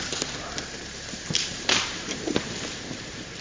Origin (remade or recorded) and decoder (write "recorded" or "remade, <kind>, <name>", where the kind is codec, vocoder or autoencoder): remade, vocoder, BigVGAN v2